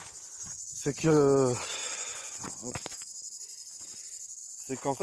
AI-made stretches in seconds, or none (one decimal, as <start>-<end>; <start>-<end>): 1.8-3.7; 4.4-5.0